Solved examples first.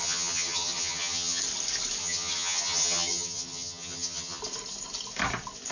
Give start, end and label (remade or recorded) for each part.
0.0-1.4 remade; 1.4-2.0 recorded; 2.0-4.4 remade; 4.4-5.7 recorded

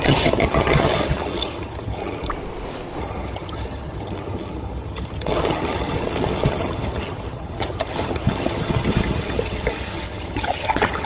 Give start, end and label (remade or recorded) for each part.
0.0-2.3 remade; 2.3-3.0 recorded; 3.0-11.0 remade